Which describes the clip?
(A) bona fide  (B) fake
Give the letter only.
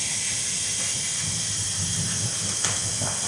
A